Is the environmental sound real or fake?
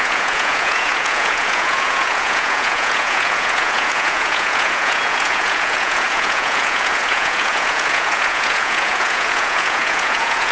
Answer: fake